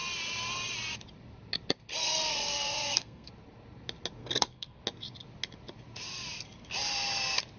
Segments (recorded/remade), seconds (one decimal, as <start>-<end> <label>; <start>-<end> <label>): 0.0-2.0 recorded; 2.0-3.3 remade; 3.3-4.2 recorded; 4.2-4.8 remade; 4.8-7.6 recorded